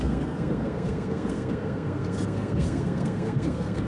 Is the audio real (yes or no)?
no